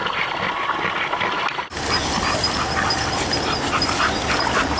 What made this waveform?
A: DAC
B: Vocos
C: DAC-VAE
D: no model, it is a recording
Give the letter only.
D